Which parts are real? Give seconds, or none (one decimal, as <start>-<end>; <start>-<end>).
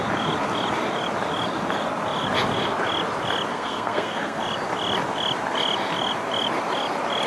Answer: 0.0-3.5; 4.4-7.3